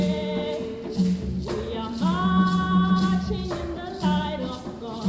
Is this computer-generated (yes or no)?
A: no